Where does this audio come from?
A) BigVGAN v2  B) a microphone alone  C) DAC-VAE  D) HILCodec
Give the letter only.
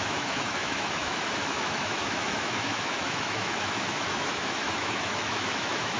C